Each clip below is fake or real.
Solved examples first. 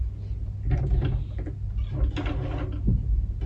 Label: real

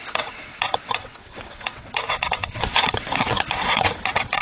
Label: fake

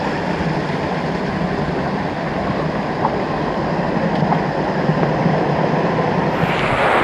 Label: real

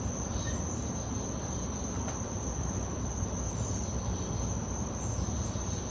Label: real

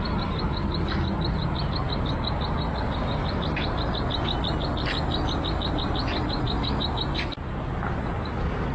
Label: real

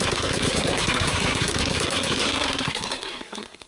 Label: fake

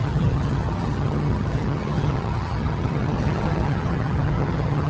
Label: fake